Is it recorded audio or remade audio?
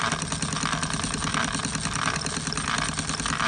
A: recorded